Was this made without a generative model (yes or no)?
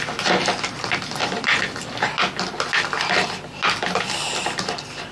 yes